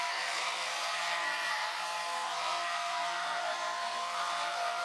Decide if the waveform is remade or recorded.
remade